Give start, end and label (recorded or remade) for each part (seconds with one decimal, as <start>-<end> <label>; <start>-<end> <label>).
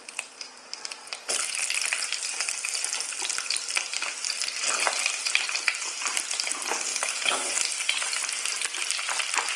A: 0.0-6.9 recorded; 6.9-7.5 remade; 7.5-9.6 recorded